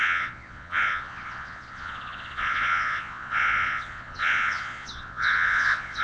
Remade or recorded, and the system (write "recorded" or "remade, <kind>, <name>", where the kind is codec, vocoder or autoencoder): remade, vocoder, Vocos